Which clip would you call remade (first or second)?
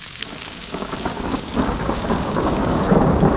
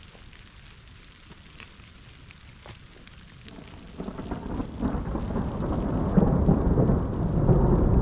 first